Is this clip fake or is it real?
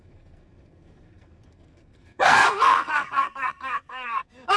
fake